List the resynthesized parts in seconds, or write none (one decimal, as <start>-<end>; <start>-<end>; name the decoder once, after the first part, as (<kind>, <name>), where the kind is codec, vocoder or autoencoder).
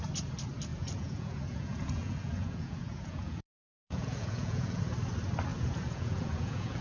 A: 0.7-4.8 (vocoder, Vocos); 5.5-6.8